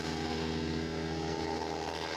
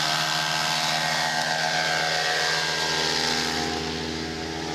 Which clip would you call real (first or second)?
second